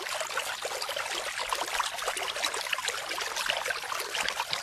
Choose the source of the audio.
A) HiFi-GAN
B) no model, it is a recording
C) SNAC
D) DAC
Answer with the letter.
B